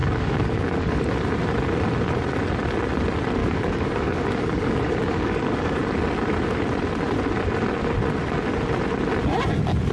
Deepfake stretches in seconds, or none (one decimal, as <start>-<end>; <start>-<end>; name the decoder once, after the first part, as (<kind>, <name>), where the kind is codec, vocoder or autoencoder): 0.0-1.1 (codec, DAC); 3.4-5.8